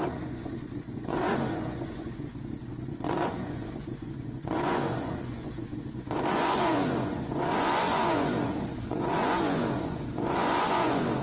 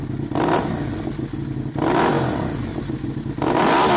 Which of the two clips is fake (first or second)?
first